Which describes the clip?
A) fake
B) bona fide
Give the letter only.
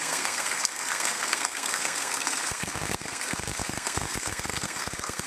A